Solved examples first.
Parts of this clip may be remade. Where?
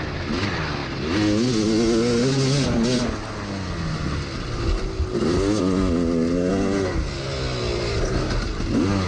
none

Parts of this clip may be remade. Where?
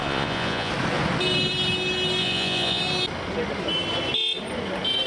0.0-0.7 (vocoder, Vocos); 2.2-2.8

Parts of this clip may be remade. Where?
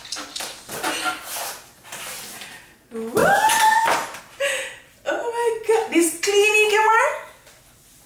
none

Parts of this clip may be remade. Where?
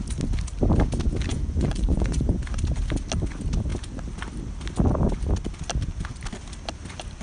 1.3-2.4 (vocoder, Vocos)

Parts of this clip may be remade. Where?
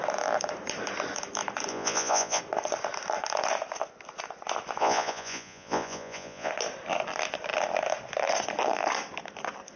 1.7-2.4 (vocoder, Vocos); 4.8-6.5